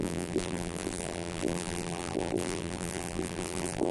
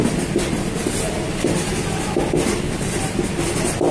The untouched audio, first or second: second